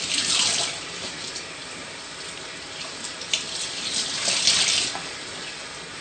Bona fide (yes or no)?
yes